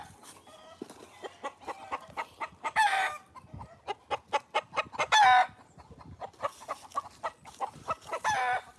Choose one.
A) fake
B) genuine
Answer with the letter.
B